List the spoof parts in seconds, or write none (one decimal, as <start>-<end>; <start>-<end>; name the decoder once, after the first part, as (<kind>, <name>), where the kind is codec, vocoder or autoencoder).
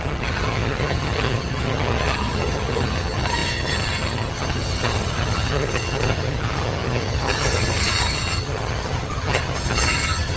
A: 0.0-10.4 (vocoder, HiFi-GAN)